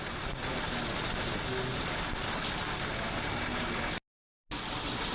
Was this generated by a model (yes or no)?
no